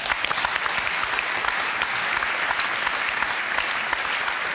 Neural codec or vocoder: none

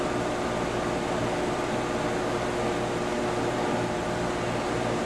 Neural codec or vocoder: none